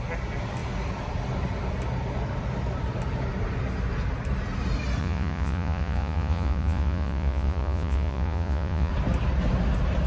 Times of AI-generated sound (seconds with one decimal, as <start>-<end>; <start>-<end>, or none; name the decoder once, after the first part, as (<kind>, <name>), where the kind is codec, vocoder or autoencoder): 5.0-8.9 (vocoder, Vocos)